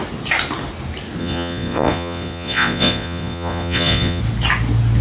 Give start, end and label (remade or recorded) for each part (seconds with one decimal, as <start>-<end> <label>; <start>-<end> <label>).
0.0-1.2 recorded; 1.2-4.2 remade; 4.2-5.0 recorded